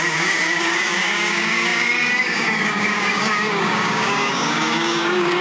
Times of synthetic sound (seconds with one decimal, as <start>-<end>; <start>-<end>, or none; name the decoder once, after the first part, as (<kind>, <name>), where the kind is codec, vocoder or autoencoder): 0.0-5.4 (codec, DAC)